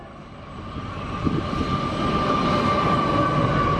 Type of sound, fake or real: real